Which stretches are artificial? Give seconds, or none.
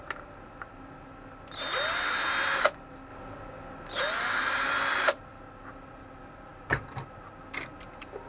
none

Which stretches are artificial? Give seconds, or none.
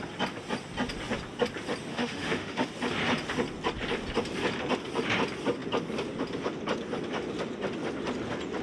1.9-2.7 (autoencoder, DAC-VAE)